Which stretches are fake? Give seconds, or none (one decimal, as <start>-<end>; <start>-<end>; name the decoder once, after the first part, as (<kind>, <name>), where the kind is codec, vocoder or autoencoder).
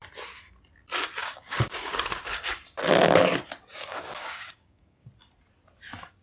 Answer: 1.2-2.4 (codec, DAC); 3.7-5.1